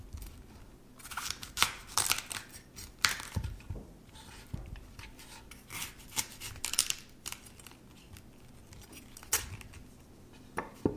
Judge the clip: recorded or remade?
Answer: recorded